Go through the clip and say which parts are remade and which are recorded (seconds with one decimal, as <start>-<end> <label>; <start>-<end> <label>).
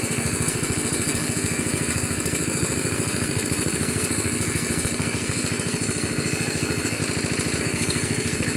0.0-7.0 remade; 7.0-7.6 recorded; 7.6-8.6 remade